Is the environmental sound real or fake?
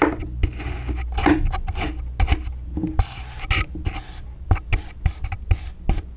real